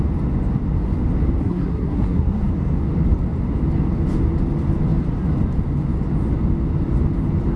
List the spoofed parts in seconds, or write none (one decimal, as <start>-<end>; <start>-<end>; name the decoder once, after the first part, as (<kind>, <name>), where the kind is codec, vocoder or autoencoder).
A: 1.4-2.5 (codec, SNAC)